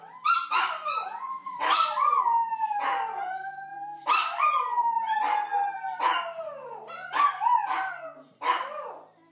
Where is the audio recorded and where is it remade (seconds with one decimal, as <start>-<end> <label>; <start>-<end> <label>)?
0.0-1.4 recorded; 1.4-2.2 remade; 2.2-3.7 recorded; 3.7-6.0 remade; 6.0-9.3 recorded